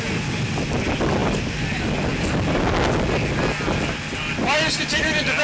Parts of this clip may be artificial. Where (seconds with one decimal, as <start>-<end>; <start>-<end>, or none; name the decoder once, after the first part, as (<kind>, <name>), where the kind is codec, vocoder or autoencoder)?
none